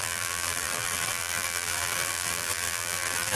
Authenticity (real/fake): fake